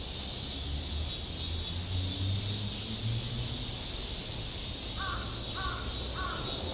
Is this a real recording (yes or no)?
yes